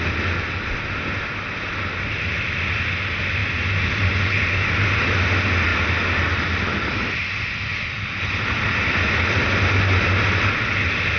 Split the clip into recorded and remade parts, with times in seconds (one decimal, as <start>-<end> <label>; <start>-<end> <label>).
0.0-11.2 recorded